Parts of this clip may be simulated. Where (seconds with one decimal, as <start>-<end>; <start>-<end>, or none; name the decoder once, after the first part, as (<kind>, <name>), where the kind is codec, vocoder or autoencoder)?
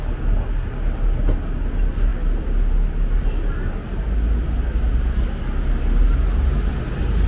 none